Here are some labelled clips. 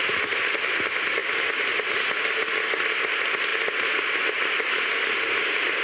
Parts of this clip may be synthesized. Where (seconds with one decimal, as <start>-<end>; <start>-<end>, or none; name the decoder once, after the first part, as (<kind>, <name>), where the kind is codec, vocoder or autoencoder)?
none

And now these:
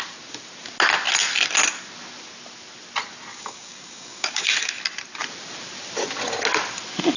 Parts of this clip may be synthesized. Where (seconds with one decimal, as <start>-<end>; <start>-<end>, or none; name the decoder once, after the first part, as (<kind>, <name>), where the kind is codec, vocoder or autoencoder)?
3.3-4.8 (codec, DAC)

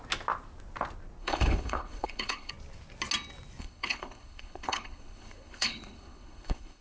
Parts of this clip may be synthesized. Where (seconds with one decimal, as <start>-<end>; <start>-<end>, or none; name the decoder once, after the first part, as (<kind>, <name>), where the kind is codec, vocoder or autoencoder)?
1.2-2.5 (codec, HILCodec); 3.6-6.8

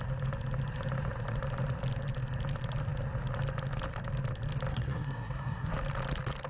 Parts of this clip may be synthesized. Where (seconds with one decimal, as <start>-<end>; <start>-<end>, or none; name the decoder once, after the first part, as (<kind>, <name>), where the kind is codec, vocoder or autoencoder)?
4.7-5.7 (codec, SNAC)

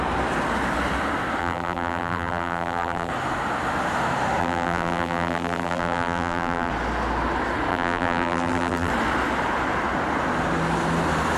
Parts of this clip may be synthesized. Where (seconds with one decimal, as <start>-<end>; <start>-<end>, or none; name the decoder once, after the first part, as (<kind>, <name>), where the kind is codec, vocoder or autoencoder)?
1.4-3.1 (vocoder, BigVGAN v2); 4.4-6.7; 7.7-8.9

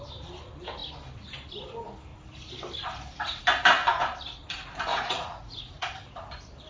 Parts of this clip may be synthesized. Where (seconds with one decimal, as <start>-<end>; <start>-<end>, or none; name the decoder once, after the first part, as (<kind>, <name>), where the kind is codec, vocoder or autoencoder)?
4.9-5.9 (vocoder, Vocos)

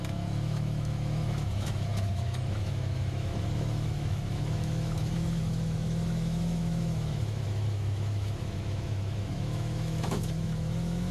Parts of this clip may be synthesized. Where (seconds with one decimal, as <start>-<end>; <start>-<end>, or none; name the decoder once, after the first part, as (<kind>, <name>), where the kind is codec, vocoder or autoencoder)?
0.0-11.1 (autoencoder, DAC-VAE)